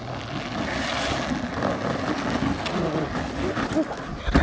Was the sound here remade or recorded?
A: recorded